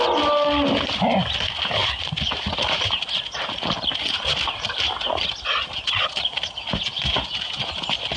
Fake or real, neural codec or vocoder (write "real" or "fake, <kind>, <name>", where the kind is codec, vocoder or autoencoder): real